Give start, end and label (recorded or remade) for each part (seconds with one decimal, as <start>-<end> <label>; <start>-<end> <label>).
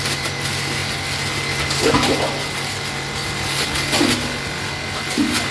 0.0-5.5 recorded